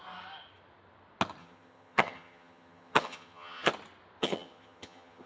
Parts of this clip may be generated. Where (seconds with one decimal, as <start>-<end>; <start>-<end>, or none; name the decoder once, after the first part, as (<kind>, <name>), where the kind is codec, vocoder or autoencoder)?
1.4-3.7 (vocoder, HiFi-GAN); 4.2-5.3